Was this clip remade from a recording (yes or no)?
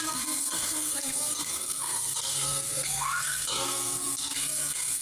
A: yes